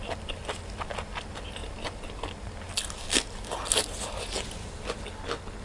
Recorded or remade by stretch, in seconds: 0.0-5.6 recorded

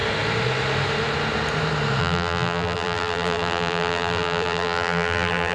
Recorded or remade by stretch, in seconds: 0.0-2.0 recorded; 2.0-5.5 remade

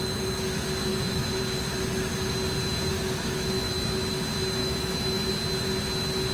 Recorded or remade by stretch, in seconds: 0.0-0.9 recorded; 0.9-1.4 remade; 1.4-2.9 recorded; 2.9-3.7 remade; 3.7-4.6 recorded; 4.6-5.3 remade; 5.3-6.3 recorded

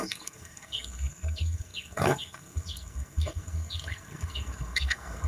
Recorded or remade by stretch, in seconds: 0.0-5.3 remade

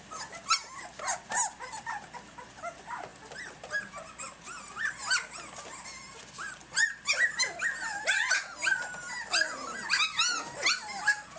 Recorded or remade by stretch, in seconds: 0.0-11.4 recorded